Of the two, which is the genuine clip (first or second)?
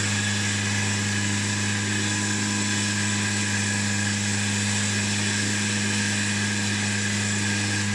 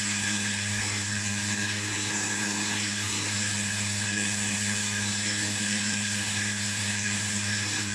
first